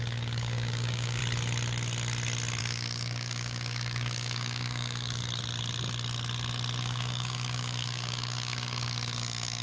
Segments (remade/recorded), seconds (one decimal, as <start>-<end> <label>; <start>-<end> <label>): 0.0-1.2 remade; 1.2-2.6 recorded; 2.6-5.2 remade; 5.2-6.8 recorded; 6.8-9.6 remade